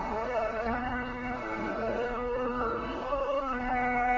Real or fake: fake